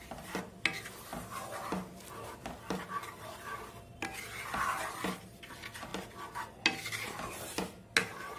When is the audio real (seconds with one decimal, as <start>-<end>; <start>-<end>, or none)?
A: 0.0-8.4